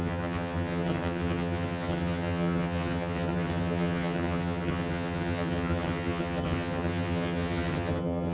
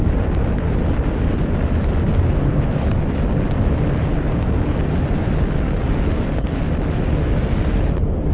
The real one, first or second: second